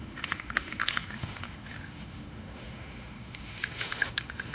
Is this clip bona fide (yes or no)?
no